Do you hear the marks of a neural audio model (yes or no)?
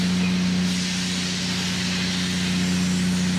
no